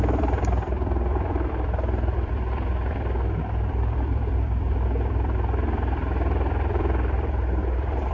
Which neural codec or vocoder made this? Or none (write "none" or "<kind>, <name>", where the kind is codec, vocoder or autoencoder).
vocoder, BigVGAN v2